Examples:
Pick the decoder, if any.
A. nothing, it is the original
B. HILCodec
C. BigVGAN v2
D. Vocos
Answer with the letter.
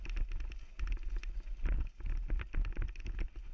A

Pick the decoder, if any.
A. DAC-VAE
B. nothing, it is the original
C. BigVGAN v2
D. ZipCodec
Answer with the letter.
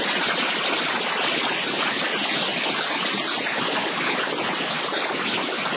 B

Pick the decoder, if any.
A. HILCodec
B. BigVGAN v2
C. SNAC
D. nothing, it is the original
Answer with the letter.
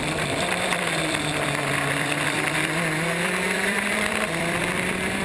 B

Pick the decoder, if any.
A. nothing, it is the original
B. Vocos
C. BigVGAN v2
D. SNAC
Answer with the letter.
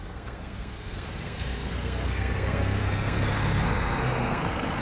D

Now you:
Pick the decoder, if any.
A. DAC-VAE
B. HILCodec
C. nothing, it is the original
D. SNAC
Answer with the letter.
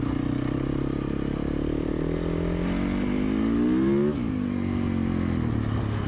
C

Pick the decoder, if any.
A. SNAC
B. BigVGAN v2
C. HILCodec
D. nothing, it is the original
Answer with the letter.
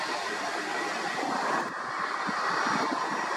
D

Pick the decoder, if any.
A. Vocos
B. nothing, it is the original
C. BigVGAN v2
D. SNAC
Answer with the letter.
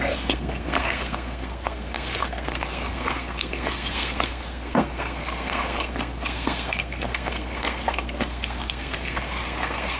D